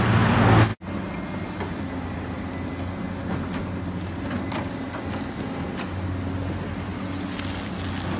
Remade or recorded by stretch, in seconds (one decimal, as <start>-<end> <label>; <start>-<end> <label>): 0.0-8.2 recorded